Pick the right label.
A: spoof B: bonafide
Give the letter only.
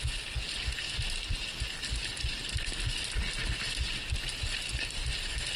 B